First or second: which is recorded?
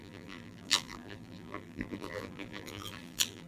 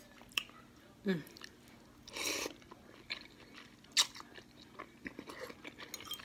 second